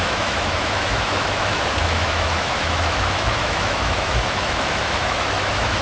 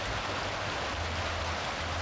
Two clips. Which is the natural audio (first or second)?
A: second